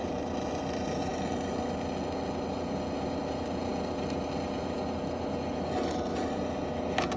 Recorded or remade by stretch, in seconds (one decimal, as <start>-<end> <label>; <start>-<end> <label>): 0.0-7.2 recorded

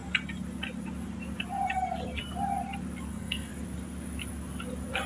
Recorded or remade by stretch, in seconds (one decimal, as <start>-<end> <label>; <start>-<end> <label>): 0.0-3.1 recorded; 3.1-3.5 remade; 3.5-5.1 recorded

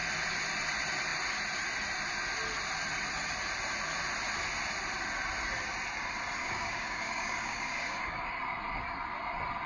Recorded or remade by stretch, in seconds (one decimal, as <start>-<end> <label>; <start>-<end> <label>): 0.0-6.4 recorded; 6.4-8.3 remade; 8.3-9.7 recorded

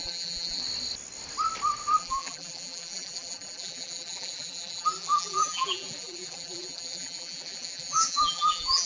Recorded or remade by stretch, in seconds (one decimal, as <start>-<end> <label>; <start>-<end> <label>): 0.0-0.6 remade; 0.6-2.0 recorded; 2.0-8.9 remade

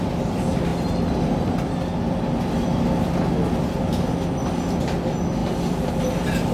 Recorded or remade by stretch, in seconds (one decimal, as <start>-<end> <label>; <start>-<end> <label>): 0.0-6.5 recorded

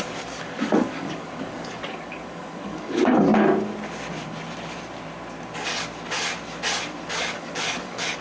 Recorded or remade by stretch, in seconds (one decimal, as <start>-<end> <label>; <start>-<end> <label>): 0.0-3.3 remade; 3.3-7.2 recorded; 7.2-8.2 remade

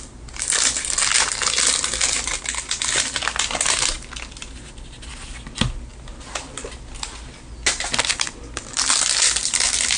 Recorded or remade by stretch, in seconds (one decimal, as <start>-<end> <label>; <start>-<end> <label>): 0.0-10.0 recorded

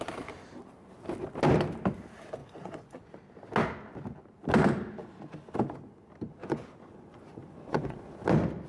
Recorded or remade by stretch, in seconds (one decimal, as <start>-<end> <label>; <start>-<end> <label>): 0.0-2.4 recorded; 2.4-3.1 remade; 3.1-6.4 recorded; 6.4-8.0 remade; 8.0-8.7 recorded